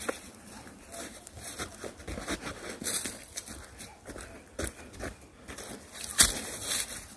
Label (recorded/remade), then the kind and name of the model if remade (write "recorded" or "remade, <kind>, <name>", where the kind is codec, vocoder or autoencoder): remade, vocoder, BigVGAN v2